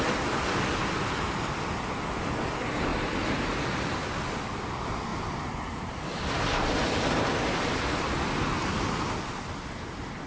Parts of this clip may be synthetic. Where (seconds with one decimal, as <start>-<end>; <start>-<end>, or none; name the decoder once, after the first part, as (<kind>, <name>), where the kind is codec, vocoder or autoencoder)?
none